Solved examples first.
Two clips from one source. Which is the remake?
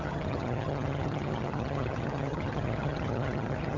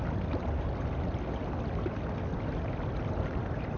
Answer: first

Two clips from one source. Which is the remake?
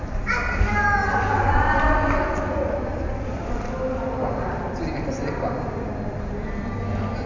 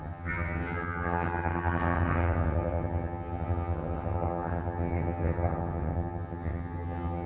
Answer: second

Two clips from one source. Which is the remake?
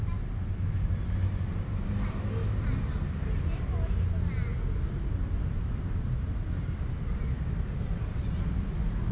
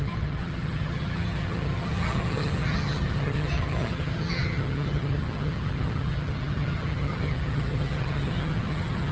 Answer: second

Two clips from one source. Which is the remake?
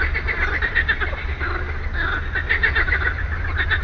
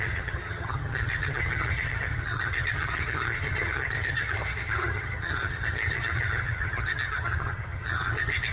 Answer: second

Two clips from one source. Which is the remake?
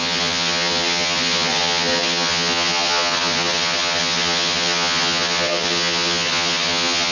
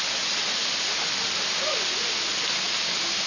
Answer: first